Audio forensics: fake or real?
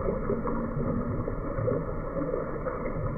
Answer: real